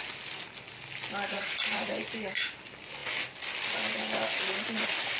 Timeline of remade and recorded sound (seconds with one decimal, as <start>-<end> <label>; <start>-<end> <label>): 0.0-1.3 recorded; 1.3-2.0 remade; 2.0-5.2 recorded